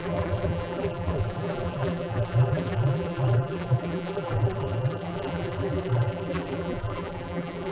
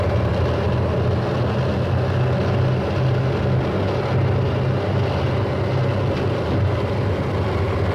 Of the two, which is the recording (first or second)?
second